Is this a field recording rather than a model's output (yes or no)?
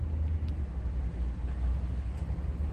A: yes